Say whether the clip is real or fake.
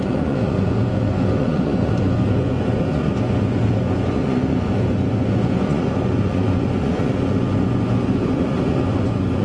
fake